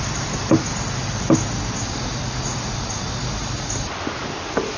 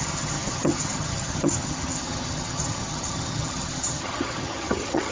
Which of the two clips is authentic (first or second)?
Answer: first